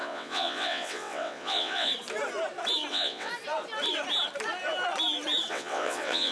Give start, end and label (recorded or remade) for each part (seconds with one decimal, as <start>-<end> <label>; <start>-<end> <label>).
0.0-1.9 remade; 1.9-2.9 recorded; 2.9-3.3 remade; 3.3-5.5 recorded; 5.5-6.3 remade